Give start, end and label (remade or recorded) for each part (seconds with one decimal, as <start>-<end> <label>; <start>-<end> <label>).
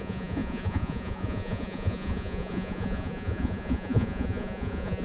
0.0-5.0 remade